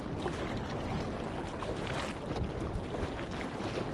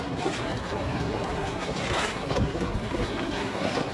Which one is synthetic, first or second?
second